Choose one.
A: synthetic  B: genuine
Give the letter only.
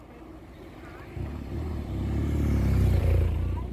A